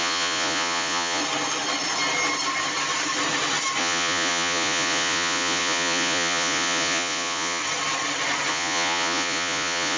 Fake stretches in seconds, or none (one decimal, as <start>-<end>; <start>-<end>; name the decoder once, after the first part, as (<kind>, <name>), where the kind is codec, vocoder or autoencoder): 0.0-1.2 (vocoder, Vocos); 3.8-7.6; 8.5-10.0